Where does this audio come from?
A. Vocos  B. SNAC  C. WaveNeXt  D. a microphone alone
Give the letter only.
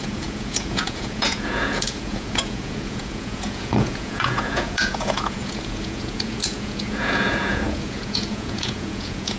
A